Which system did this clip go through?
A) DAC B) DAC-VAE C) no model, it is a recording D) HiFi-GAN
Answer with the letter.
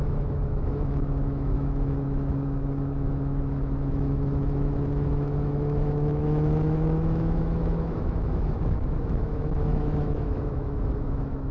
B